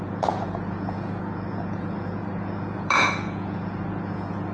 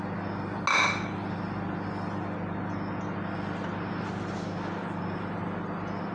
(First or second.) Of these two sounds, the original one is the second